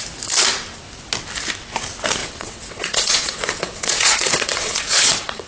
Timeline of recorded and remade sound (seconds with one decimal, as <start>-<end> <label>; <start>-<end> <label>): 0.0-2.2 recorded; 2.2-5.5 remade